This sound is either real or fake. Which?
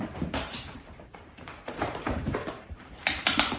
fake